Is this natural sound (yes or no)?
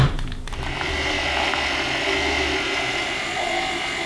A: yes